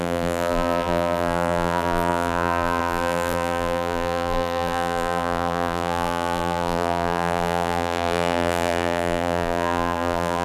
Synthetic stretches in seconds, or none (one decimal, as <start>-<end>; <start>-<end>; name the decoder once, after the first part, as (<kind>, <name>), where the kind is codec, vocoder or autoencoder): 0.0-10.4 (vocoder, BigVGAN v2)